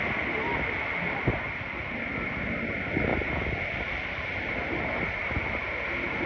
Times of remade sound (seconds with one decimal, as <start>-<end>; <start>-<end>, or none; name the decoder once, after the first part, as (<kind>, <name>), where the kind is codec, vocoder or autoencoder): none